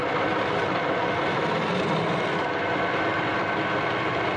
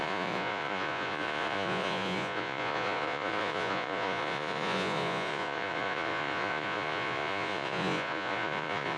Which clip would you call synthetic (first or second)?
second